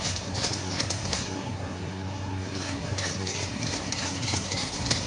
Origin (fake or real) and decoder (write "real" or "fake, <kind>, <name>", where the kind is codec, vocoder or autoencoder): fake, codec, SNAC